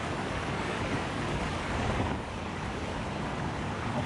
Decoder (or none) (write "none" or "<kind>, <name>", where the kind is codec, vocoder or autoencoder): codec, DAC